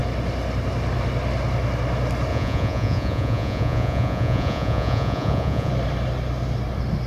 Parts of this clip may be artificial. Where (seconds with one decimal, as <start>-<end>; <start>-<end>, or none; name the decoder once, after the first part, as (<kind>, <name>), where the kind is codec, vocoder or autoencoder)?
2.3-5.7 (vocoder, Vocos)